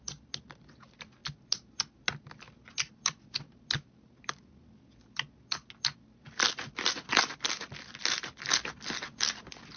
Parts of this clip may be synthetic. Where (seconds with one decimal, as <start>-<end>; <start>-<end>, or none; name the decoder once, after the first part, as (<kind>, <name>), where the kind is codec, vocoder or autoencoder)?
none

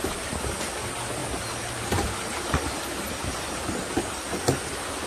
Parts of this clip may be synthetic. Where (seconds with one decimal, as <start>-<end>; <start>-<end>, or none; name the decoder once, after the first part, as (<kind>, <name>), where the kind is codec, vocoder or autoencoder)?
none